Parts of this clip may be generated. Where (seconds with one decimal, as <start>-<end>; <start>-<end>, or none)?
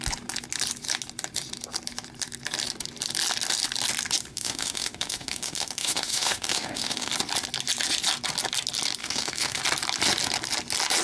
4.3-7.1; 9.0-9.6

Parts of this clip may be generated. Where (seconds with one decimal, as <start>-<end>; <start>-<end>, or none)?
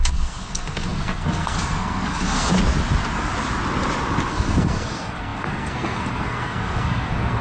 0.0-2.5; 4.3-7.4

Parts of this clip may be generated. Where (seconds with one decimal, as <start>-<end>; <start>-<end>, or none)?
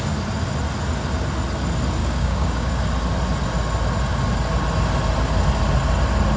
2.0-2.8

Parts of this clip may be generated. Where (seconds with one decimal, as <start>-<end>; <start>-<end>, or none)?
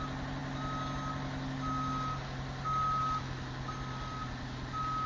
none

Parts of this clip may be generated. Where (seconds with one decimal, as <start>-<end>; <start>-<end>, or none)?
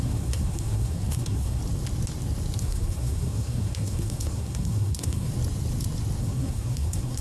0.0-1.6; 2.6-5.3; 6.2-7.2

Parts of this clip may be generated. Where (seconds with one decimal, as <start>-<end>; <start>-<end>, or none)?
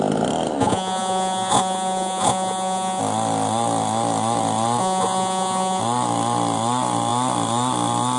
0.6-3.0; 4.8-5.8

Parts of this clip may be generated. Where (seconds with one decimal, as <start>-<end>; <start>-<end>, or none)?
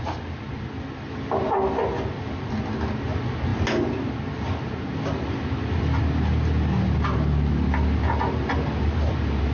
none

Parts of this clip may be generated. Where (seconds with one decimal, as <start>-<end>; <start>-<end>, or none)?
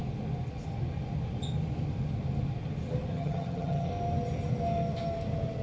3.1-3.9